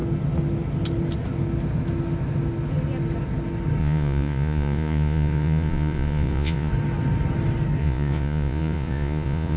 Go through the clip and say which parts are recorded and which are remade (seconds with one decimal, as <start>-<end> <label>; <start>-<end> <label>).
0.0-3.8 recorded; 3.8-6.7 remade; 6.7-7.8 recorded; 7.8-9.6 remade